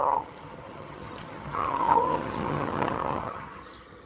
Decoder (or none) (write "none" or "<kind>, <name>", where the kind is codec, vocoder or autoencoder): vocoder, HiFi-GAN